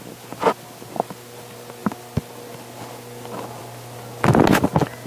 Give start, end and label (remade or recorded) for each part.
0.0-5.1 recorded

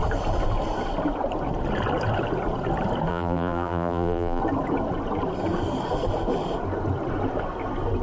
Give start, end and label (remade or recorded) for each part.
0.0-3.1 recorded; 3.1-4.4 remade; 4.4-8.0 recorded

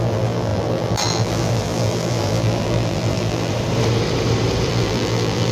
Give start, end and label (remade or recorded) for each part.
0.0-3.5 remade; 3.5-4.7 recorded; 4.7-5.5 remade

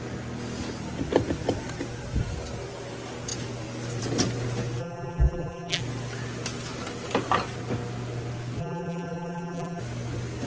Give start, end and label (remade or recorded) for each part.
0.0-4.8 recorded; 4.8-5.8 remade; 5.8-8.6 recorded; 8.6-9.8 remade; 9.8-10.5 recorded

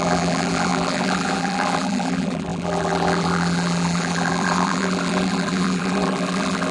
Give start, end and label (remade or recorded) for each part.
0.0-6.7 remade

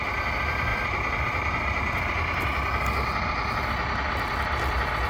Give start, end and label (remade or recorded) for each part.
0.0-0.7 recorded; 0.7-2.4 remade; 2.4-5.1 recorded

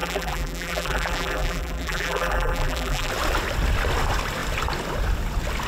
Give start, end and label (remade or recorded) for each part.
0.0-3.1 remade; 3.1-5.7 recorded